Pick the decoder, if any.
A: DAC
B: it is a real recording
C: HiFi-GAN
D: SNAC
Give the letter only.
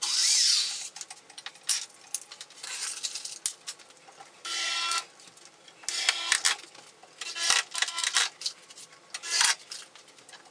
B